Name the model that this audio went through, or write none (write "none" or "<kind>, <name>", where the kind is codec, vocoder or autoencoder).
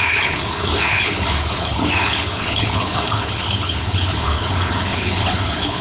codec, HILCodec